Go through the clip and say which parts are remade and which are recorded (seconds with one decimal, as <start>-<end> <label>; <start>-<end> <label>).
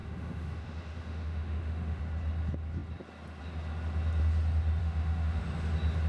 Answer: 0.0-2.0 remade; 2.0-4.8 recorded; 4.8-5.4 remade; 5.4-6.1 recorded